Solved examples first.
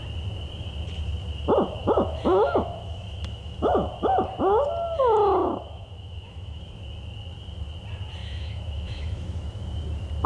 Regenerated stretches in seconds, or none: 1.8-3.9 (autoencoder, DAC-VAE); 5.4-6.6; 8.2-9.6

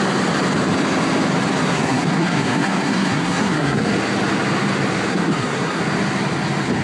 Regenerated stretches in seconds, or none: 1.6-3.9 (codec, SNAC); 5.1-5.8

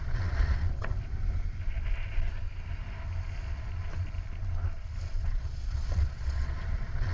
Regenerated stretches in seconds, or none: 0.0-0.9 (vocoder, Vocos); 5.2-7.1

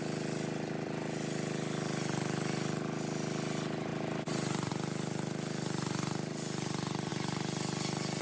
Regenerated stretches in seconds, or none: 3.9-4.7 (vocoder, BigVGAN v2)